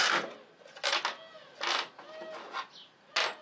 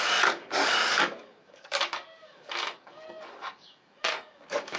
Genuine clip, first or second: first